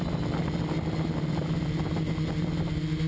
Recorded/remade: recorded